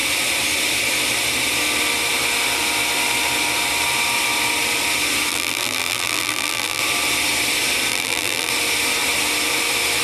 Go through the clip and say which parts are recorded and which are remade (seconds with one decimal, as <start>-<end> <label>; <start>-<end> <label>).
0.0-5.3 recorded; 5.3-6.8 remade; 6.8-7.9 recorded; 7.9-8.5 remade; 8.5-10.0 recorded